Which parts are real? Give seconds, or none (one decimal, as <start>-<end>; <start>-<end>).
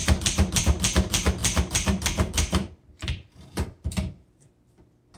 0.6-1.4; 4.5-5.2